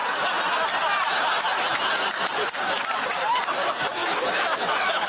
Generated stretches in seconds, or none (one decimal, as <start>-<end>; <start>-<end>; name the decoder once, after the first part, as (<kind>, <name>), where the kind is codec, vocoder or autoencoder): 4.0-5.1 (autoencoder, DAC-VAE)

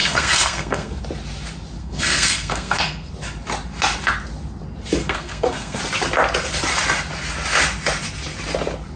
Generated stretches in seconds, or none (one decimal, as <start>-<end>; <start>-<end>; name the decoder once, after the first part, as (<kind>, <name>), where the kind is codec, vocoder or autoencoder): 0.0-1.0 (codec, SNAC); 1.8-3.1; 5.0-5.8

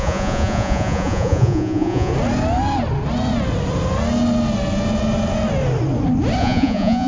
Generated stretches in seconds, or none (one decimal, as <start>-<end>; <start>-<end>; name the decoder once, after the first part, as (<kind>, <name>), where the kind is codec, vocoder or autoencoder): 0.0-2.1 (vocoder, Vocos); 6.4-7.1

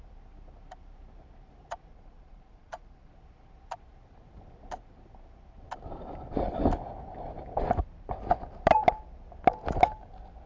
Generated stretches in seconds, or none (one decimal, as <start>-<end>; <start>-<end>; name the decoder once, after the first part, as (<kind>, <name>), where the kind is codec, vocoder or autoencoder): 1.9-3.1 (vocoder, Vocos)